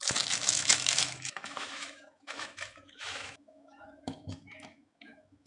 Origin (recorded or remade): remade